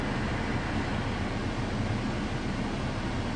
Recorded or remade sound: recorded